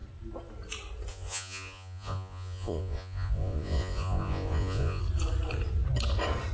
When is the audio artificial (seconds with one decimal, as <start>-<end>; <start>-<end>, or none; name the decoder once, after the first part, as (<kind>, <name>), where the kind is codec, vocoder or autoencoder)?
1.1-5.0 (vocoder, Vocos)